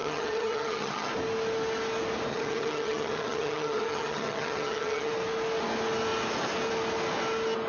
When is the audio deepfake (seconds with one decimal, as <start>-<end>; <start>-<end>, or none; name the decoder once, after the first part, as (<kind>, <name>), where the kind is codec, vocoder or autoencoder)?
0.0-1.1 (vocoder, HiFi-GAN); 2.3-5.1